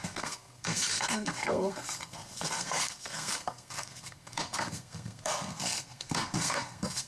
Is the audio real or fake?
fake